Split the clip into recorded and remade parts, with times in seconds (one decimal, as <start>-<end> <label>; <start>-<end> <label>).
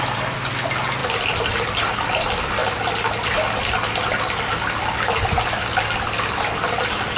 0.0-7.2 recorded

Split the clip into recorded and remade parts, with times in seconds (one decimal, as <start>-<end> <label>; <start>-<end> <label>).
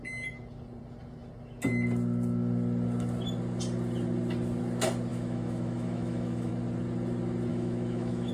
0.0-5.1 recorded; 5.1-6.5 remade; 6.5-7.5 recorded; 7.5-8.3 remade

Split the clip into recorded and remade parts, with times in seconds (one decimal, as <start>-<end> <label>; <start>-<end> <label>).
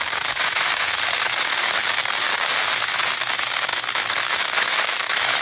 0.0-1.8 remade; 1.8-2.5 recorded; 2.5-5.4 remade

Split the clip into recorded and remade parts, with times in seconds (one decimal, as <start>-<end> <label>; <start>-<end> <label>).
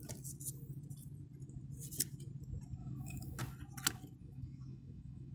0.0-2.8 recorded; 2.8-3.4 remade; 3.4-4.2 recorded; 4.2-5.3 remade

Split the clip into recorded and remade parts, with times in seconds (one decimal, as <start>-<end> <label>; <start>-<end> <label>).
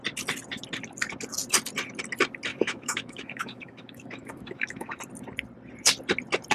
0.0-2.5 recorded; 2.5-5.0 remade; 5.0-6.5 recorded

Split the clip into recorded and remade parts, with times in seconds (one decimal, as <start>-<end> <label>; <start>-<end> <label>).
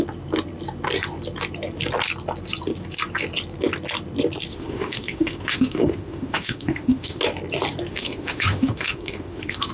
0.0-4.5 recorded; 4.5-7.2 remade; 7.2-7.9 recorded; 7.9-9.7 remade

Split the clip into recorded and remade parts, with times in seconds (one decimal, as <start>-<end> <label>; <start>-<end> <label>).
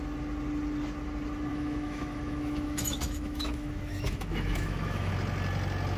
0.0-1.5 recorded; 1.5-5.1 remade; 5.1-6.0 recorded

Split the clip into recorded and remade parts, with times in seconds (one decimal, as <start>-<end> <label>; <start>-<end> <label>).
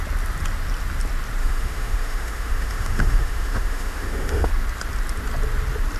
0.0-1.4 recorded; 1.4-4.5 remade; 4.5-6.0 recorded